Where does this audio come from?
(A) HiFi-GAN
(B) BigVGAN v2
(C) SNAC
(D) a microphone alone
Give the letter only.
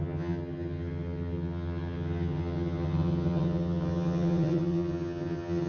A